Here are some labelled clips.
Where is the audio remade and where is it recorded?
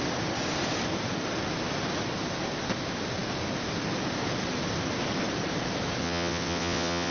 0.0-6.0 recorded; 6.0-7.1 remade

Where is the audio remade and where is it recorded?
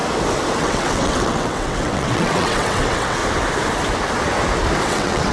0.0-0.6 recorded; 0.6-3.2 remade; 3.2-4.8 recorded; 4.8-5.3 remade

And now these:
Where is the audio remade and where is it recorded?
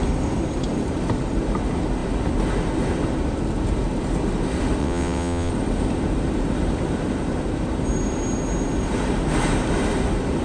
0.0-4.8 recorded; 4.8-5.5 remade; 5.5-10.4 recorded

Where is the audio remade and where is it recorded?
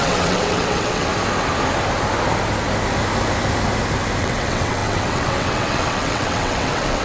0.0-1.1 remade; 1.1-4.2 recorded; 4.2-7.0 remade